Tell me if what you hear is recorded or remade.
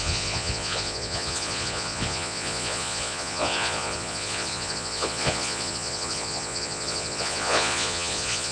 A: remade